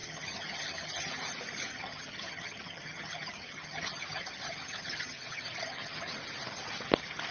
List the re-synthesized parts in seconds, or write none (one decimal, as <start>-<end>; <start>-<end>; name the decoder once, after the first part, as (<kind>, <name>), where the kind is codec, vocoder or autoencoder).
0.0-1.1 (vocoder, HiFi-GAN); 1.7-6.1